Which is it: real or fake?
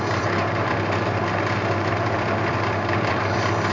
fake